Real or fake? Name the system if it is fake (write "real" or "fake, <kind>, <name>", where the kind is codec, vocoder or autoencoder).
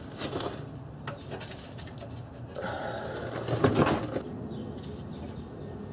real